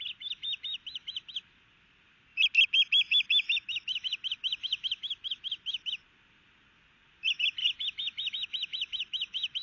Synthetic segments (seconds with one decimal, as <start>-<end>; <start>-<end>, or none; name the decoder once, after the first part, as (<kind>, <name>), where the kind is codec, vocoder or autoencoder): none